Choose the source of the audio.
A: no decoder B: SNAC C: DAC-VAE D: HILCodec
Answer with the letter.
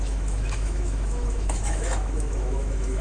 C